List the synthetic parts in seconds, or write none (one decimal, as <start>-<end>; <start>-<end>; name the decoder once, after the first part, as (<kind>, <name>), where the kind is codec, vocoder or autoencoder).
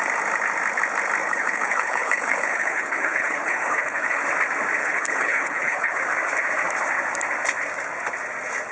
1.2-4.2 (codec, HILCodec); 4.8-6.0